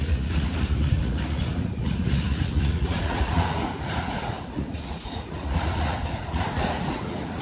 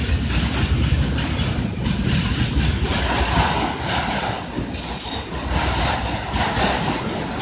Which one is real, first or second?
second